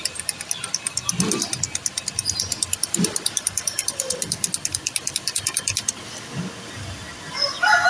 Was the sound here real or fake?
real